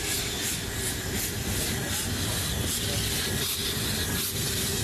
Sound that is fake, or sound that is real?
real